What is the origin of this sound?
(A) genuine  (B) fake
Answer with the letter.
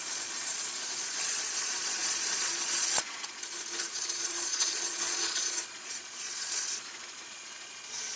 B